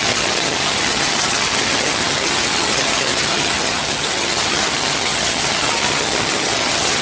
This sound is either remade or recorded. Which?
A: remade